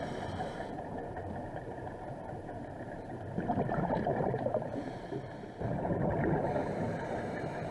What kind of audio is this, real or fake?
fake